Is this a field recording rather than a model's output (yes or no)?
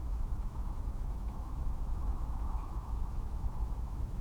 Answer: no